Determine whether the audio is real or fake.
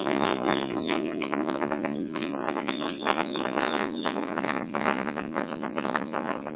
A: fake